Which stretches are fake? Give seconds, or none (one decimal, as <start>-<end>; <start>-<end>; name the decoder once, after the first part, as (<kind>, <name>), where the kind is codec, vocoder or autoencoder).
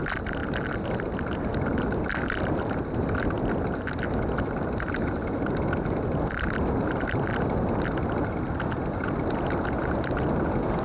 none